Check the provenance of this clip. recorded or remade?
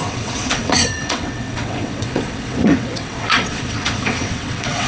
remade